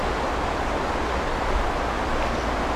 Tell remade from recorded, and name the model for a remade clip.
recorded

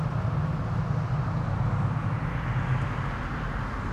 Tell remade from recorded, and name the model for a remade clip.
recorded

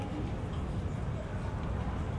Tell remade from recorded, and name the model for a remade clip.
recorded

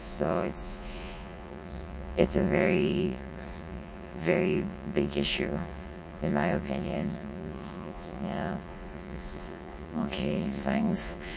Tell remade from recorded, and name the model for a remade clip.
remade, vocoder, Vocos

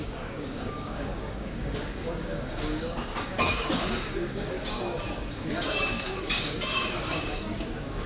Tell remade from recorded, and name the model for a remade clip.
remade, codec, DAC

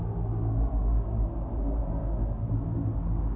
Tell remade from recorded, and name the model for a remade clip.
recorded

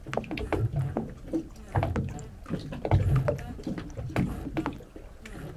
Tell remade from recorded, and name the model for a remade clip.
recorded